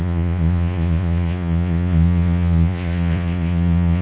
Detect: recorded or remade remade